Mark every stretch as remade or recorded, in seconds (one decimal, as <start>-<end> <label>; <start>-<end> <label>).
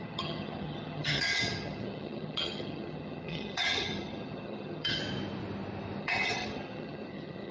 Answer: 0.0-5.0 remade; 5.0-6.0 recorded; 6.0-7.5 remade